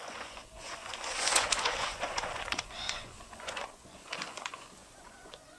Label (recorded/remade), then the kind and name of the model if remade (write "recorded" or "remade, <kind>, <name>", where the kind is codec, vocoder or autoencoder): remade, vocoder, Vocos